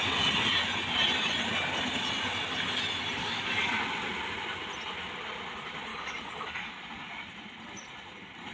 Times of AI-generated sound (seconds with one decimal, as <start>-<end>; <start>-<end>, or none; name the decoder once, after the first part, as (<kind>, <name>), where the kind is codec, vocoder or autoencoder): 3.2-3.7 (codec, DAC); 5.9-6.7